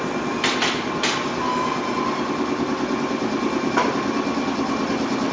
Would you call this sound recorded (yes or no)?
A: yes